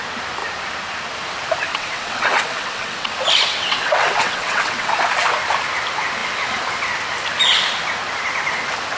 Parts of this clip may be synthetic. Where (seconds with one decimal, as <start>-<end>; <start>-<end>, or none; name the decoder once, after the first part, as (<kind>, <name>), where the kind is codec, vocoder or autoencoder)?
1.7-3.1 (vocoder, WaveNeXt); 3.5-4.9